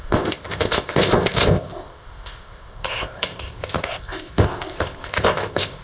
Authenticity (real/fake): fake